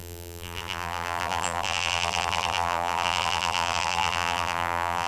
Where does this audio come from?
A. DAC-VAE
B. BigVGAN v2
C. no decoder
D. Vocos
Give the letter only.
B